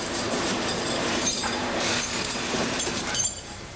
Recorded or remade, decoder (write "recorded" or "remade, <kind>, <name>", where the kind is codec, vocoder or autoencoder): remade, vocoder, BigVGAN v2